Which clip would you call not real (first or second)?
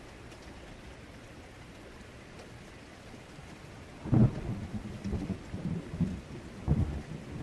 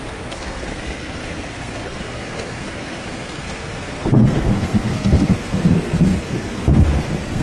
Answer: second